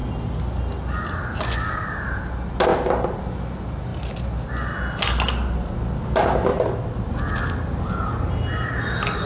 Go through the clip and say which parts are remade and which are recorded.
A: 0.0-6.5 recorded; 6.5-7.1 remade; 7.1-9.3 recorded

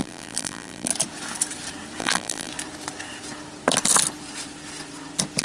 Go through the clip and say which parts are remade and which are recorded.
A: 0.0-0.9 remade; 0.9-2.0 recorded; 2.0-2.5 remade; 2.5-5.4 recorded

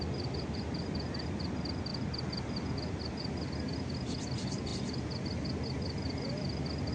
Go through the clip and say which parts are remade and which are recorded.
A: 0.0-1.9 recorded; 1.9-2.6 remade; 2.6-6.9 recorded

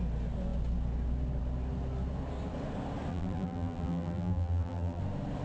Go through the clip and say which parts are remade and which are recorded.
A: 0.0-3.1 recorded; 3.1-5.0 remade; 5.0-5.4 recorded